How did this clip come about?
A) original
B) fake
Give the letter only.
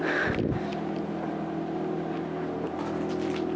A